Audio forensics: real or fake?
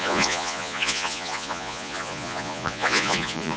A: fake